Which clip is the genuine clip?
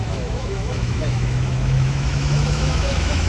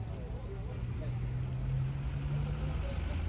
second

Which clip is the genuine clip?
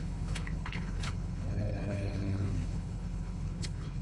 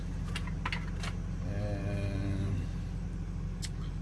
second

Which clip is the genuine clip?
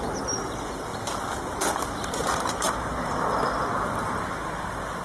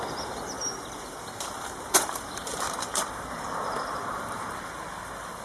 first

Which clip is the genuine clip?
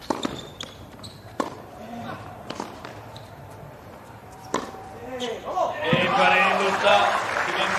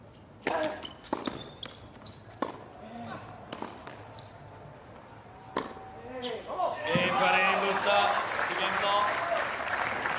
second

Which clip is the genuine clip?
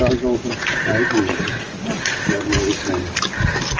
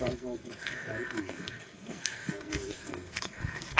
first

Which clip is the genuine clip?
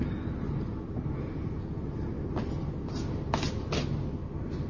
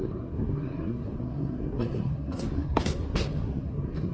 first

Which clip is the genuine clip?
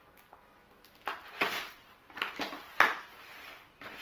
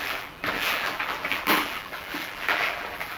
first